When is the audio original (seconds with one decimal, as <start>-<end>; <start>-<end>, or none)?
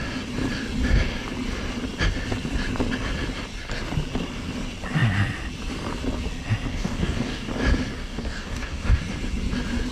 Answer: 0.0-6.7; 7.5-7.9; 9.0-9.9